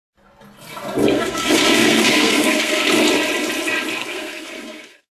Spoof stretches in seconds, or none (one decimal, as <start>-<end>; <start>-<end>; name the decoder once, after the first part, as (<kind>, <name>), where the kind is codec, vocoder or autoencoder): 1.0-2.9 (codec, SNAC); 4.0-5.1